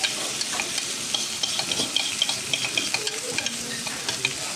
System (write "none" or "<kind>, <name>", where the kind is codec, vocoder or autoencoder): none